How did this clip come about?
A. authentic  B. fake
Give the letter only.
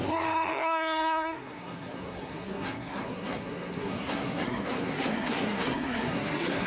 B